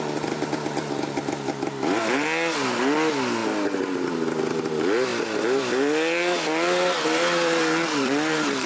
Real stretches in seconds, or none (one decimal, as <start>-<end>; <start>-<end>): 0.0-5.1